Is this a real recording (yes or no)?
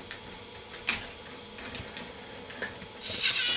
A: yes